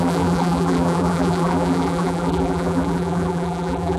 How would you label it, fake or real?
fake